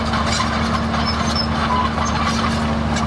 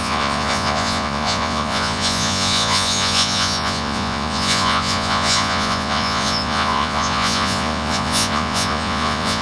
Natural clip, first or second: first